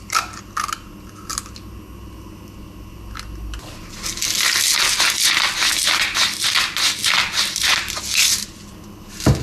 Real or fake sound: real